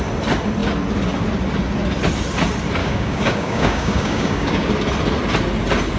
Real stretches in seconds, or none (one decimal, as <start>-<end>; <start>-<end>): 0.0-2.8; 4.7-6.0

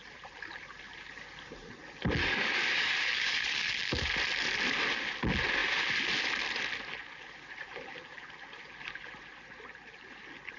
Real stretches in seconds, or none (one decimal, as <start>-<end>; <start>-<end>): 0.0-2.2; 3.7-10.6

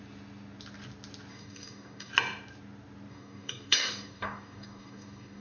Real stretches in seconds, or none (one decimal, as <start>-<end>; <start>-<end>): 0.0-1.3; 2.1-3.1